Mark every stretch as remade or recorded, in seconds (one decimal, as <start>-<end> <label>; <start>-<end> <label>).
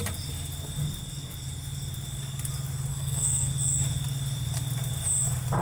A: 0.0-2.9 recorded; 2.9-3.5 remade; 3.5-5.6 recorded